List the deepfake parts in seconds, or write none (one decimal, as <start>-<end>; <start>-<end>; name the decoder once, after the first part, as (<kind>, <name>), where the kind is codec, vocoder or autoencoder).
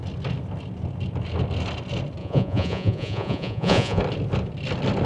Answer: 2.2-4.0 (vocoder, Vocos)